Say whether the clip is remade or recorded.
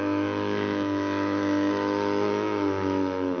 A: remade